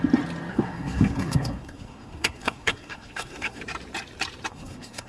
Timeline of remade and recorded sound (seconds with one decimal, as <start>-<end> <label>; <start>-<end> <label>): 0.0-0.5 recorded; 0.5-3.6 remade; 3.6-4.5 recorded; 4.5-5.1 remade